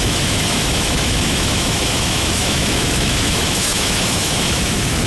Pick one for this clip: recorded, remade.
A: remade